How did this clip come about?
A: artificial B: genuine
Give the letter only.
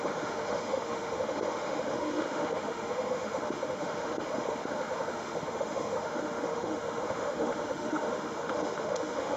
A